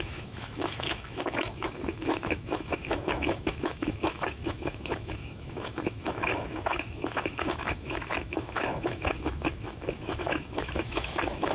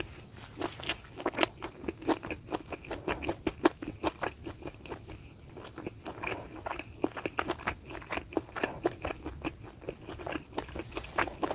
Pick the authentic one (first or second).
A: second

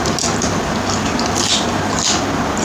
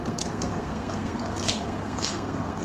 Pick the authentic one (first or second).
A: first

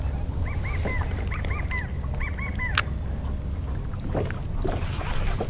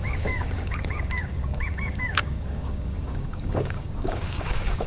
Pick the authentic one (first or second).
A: first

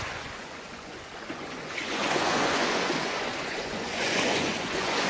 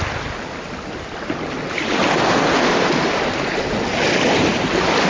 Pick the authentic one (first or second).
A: second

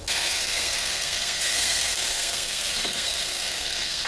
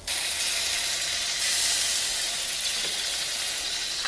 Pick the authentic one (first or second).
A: second